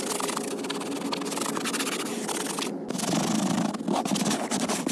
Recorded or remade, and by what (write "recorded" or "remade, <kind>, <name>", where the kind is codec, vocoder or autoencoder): recorded